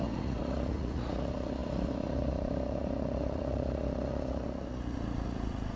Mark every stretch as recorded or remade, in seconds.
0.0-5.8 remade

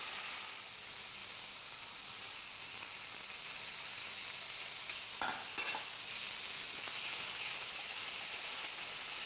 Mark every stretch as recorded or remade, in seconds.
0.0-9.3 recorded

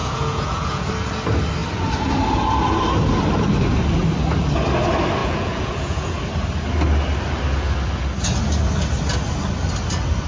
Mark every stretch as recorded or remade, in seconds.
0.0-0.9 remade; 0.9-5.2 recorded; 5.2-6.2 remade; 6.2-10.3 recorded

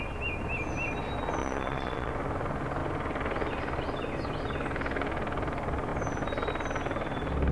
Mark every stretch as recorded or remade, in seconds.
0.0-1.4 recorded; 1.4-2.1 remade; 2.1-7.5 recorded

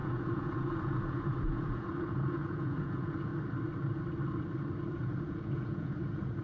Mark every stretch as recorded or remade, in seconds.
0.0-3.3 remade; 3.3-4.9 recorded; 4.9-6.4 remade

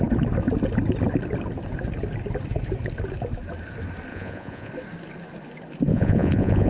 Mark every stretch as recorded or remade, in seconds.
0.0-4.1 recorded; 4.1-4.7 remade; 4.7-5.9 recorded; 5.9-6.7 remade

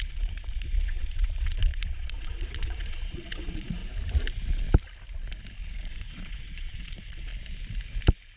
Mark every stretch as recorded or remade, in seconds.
0.0-3.8 remade; 3.8-5.6 recorded; 5.6-7.3 remade; 7.3-8.4 recorded